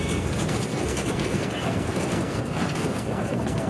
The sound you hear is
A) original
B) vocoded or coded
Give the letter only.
B